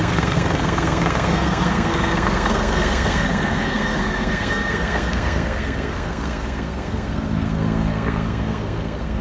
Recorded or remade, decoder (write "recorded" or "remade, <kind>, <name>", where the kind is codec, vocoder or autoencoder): remade, codec, SNAC